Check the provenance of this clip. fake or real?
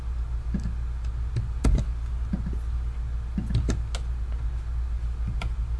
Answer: real